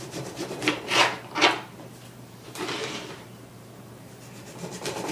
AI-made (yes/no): yes